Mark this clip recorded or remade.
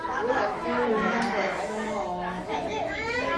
remade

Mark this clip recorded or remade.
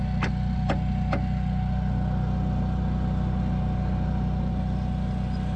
recorded